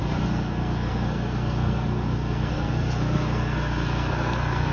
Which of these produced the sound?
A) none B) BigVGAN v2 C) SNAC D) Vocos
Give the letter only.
C